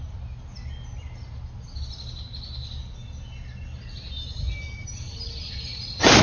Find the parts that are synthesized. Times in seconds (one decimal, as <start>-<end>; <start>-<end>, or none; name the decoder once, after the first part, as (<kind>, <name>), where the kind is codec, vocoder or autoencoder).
none